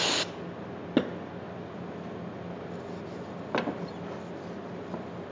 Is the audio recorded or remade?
recorded